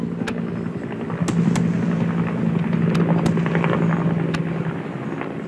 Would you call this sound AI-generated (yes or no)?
no